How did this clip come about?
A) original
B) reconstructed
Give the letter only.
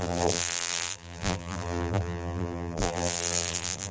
B